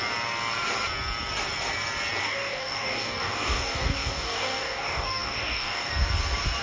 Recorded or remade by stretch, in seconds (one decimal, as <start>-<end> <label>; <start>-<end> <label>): 0.0-2.2 recorded; 2.2-5.9 remade; 5.9-6.6 recorded

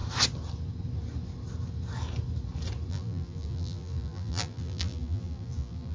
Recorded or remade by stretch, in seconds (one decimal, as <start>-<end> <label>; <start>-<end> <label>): 0.0-2.9 recorded; 2.9-5.9 remade

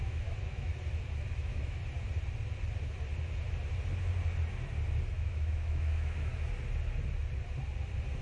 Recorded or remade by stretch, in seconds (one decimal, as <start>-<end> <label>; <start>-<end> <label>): 0.0-0.7 remade; 0.7-1.4 recorded; 1.4-1.8 remade; 1.8-5.1 recorded; 5.1-6.3 remade; 6.3-8.2 recorded

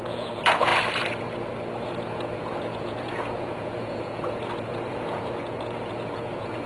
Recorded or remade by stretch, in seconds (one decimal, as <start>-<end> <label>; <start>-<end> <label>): 0.0-0.7 remade; 0.7-1.8 recorded; 1.8-6.7 remade

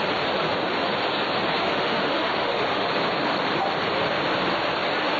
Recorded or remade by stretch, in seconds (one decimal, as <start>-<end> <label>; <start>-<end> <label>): 0.0-1.5 recorded; 1.5-2.9 remade; 2.9-5.2 recorded

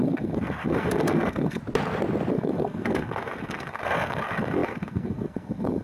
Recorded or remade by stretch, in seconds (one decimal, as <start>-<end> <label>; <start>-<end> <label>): 0.0-1.6 remade; 1.6-2.3 recorded; 2.3-5.8 remade

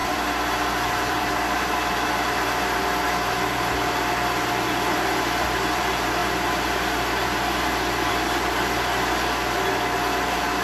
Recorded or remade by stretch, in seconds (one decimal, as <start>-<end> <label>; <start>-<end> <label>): 0.0-1.3 remade; 1.3-10.6 recorded